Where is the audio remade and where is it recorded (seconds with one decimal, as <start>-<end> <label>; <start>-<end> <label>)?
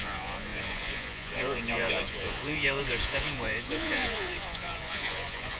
0.0-5.6 remade